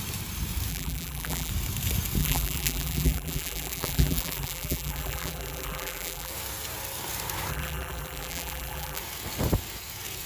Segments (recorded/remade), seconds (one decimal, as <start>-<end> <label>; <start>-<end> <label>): 0.0-0.7 recorded; 0.7-1.5 remade; 1.5-2.2 recorded; 2.2-6.3 remade; 6.3-7.5 recorded; 7.5-9.0 remade; 9.0-10.3 recorded